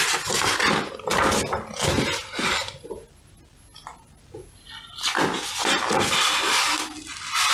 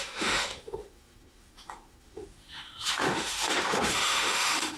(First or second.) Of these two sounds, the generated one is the second